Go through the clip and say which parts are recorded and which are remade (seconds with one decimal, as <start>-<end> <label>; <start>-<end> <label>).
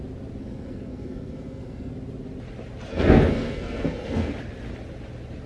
0.0-0.4 recorded; 0.4-1.9 remade; 1.9-2.9 recorded; 2.9-4.3 remade; 4.3-5.5 recorded